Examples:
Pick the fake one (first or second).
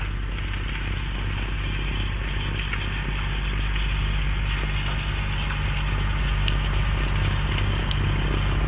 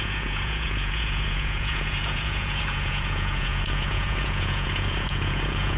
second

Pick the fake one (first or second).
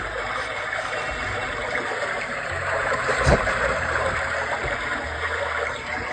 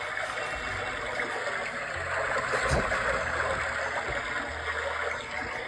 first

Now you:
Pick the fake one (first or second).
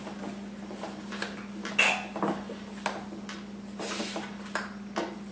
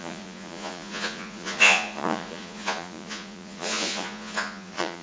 second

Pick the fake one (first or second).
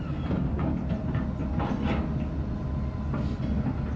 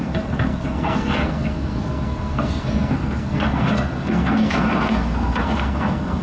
second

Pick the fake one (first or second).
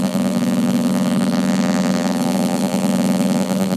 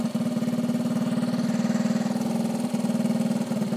first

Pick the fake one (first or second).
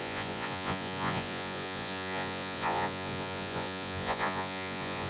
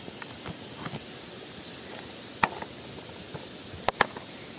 first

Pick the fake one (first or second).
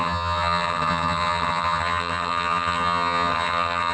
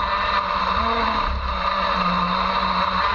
first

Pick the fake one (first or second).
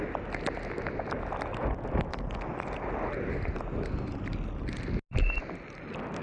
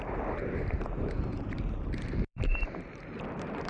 second